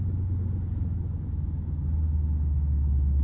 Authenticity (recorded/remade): recorded